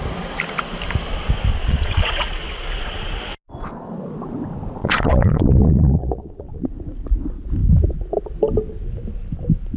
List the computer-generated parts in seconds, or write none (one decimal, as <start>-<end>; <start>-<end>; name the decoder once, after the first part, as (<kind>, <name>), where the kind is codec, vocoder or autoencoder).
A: 1.5-3.2 (vocoder, Vocos); 4.8-6.7